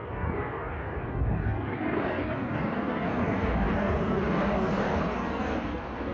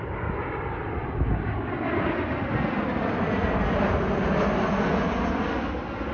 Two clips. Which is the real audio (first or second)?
second